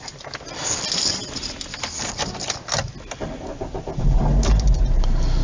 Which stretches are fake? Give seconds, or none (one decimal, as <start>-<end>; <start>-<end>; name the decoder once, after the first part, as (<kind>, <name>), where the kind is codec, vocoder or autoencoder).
none